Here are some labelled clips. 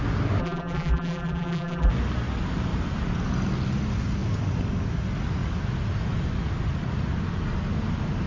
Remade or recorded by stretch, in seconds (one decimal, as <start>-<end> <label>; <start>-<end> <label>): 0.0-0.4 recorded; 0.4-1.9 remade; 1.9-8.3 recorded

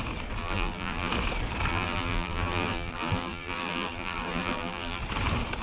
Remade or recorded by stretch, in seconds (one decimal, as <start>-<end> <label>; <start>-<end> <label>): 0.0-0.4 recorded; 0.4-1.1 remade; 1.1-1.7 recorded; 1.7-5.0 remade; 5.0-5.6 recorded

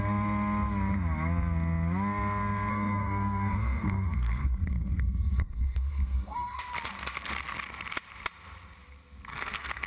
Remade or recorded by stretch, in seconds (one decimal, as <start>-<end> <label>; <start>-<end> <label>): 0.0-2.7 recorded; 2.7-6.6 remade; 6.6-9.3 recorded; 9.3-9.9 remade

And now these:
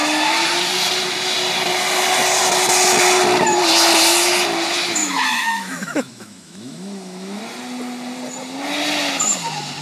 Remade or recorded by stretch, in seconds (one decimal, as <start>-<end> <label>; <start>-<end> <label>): 0.0-5.0 recorded; 5.0-7.4 remade; 7.4-9.8 recorded

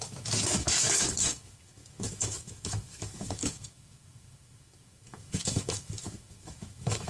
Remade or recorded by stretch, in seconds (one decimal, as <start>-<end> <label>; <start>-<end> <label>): 0.0-7.1 remade

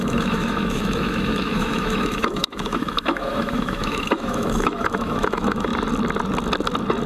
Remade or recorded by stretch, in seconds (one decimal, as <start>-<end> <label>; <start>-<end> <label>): 0.0-5.7 remade; 5.7-7.1 recorded

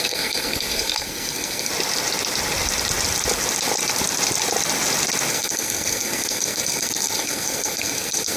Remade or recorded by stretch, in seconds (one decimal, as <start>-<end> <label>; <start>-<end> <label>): 0.0-1.7 remade; 1.7-5.3 recorded; 5.3-8.4 remade

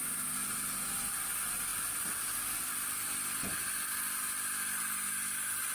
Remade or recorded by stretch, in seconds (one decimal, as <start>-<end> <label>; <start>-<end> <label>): 0.0-5.7 recorded